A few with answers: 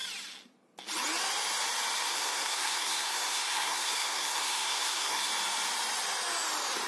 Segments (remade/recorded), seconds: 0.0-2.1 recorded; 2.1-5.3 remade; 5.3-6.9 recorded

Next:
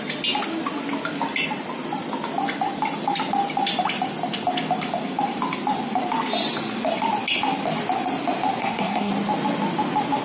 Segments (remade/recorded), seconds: 0.0-8.6 recorded; 8.6-9.1 remade; 9.1-10.2 recorded

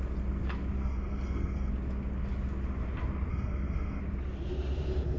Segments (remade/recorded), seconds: 0.0-0.8 recorded; 0.8-1.7 remade; 1.7-3.3 recorded; 3.3-4.0 remade; 4.0-5.2 recorded

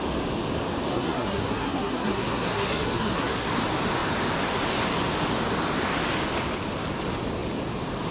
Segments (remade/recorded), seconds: 0.0-0.9 recorded; 0.9-3.5 remade; 3.5-8.1 recorded